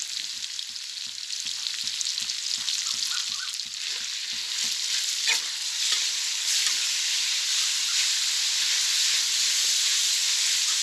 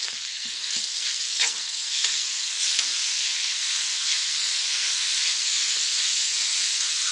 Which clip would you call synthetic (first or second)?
second